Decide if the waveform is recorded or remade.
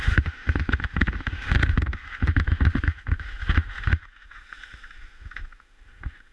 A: remade